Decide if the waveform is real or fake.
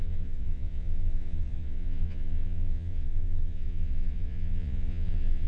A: fake